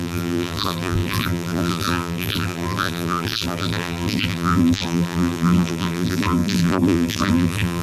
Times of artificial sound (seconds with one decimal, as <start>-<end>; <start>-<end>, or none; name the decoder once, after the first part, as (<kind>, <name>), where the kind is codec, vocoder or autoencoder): 0.0-7.8 (vocoder, BigVGAN v2)